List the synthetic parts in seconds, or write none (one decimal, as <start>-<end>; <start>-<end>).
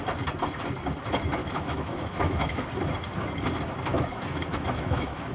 1.4-2.7; 3.9-5.3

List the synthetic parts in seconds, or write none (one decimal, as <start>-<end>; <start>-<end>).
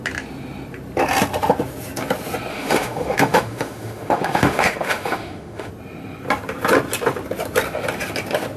2.5-5.7